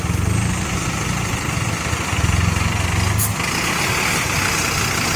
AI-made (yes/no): no